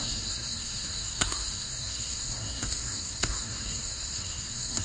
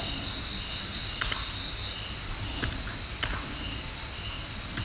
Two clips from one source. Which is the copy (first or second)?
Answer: first